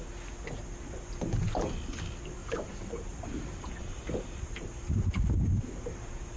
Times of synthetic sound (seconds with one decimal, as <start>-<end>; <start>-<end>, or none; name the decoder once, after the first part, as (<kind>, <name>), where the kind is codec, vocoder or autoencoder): 2.4-5.4 (vocoder, BigVGAN v2)